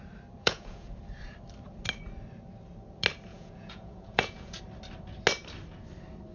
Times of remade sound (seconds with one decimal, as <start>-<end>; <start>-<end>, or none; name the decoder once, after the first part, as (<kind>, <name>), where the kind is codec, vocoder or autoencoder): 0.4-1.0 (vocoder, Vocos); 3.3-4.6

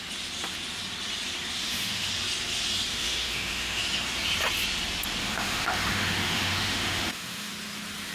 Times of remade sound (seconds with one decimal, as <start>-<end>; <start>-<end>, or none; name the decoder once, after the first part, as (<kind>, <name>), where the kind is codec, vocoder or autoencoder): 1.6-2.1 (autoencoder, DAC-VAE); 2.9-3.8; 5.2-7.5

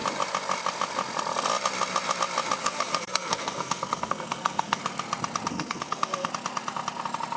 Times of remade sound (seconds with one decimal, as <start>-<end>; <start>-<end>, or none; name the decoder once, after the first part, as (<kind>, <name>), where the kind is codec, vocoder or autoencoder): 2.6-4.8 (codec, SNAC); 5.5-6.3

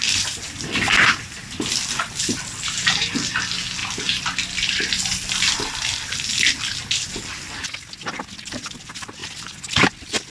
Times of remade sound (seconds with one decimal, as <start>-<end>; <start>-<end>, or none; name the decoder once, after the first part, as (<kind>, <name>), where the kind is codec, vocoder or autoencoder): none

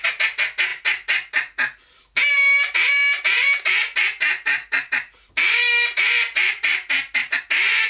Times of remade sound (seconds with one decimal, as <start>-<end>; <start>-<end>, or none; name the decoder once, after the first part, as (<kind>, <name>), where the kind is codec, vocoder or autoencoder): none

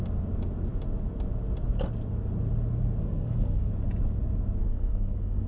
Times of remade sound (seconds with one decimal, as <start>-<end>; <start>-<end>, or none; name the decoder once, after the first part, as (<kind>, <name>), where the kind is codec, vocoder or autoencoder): 3.0-3.7 (codec, SNAC); 4.6-5.5